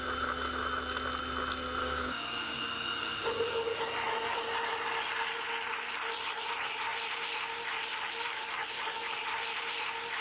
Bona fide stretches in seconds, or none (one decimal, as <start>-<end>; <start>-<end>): 0.0-1.8; 3.8-10.2